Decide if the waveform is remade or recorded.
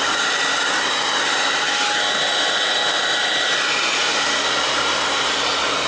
recorded